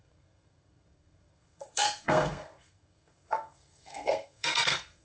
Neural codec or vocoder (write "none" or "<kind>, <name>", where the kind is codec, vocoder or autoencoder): codec, SNAC